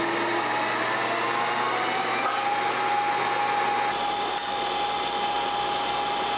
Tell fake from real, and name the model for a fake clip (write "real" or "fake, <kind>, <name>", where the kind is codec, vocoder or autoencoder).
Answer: real